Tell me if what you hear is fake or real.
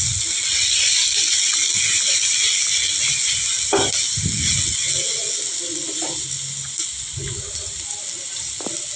real